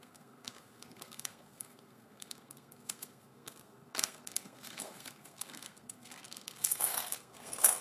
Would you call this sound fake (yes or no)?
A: yes